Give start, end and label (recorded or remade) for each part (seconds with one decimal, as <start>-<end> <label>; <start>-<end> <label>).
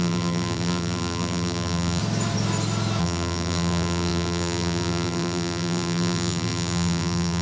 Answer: 0.0-2.0 remade; 2.0-3.0 recorded; 3.0-7.4 remade